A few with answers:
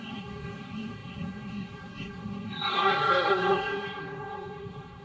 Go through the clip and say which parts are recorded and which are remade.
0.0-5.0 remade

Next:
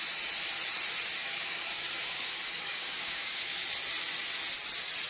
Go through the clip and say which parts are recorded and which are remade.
0.0-1.2 recorded; 1.2-3.6 remade; 3.6-5.1 recorded

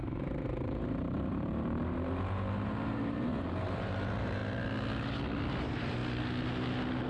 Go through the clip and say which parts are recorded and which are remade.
0.0-4.4 remade; 4.4-5.6 recorded; 5.6-6.0 remade; 6.0-7.1 recorded

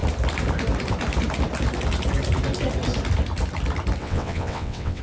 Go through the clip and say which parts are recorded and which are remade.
0.0-4.0 recorded; 4.0-5.0 remade

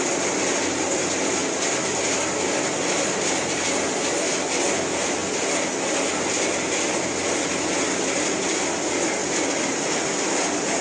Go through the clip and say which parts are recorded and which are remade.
0.0-10.8 recorded